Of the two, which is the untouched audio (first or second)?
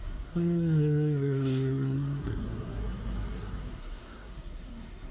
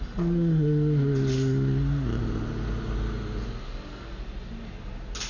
second